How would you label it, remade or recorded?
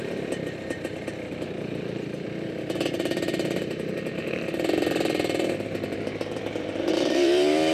remade